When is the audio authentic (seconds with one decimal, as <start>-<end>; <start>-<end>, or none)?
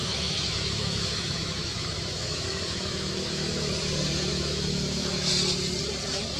3.8-4.3; 5.3-6.4